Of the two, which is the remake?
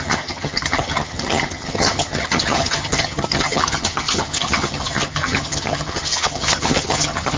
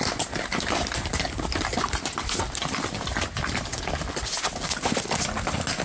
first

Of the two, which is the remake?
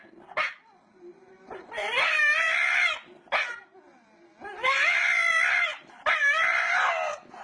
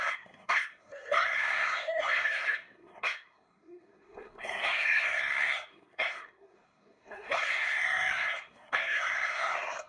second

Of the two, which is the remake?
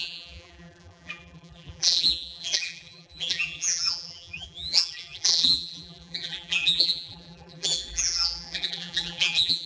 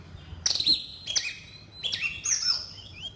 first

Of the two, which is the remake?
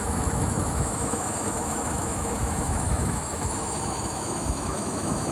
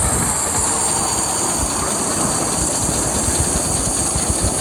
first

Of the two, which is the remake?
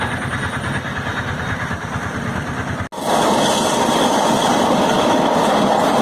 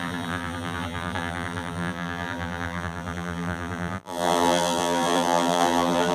second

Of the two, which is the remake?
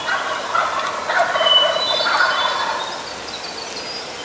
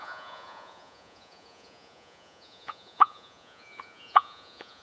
second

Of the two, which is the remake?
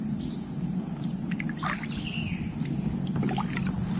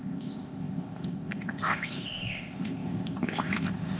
second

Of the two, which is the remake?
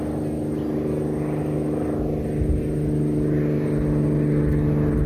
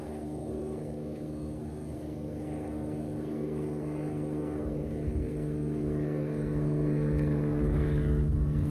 second